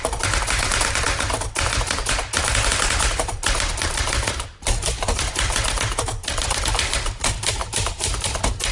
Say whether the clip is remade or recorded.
recorded